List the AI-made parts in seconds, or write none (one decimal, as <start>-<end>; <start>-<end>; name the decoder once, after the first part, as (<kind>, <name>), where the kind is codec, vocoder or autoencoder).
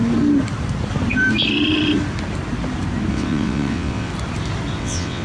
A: 3.1-4.1 (vocoder, WaveNeXt); 4.8-5.2